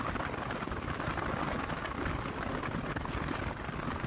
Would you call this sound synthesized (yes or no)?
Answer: no